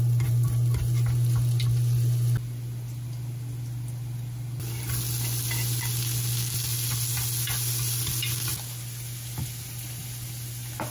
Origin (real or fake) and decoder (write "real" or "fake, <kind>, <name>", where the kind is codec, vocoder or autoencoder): real